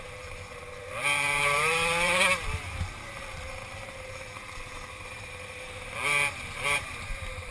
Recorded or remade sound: remade